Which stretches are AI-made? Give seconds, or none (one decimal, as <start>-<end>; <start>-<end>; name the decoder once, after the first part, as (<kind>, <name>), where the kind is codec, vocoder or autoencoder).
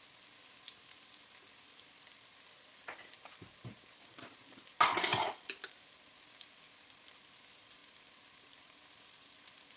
none